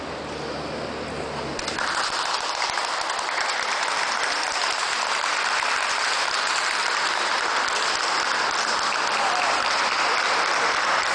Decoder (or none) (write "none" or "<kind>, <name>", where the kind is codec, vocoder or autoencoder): vocoder, BigVGAN v2